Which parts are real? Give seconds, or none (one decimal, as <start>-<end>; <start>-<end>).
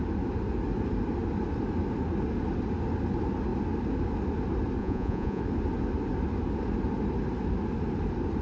0.0-4.8; 5.4-8.4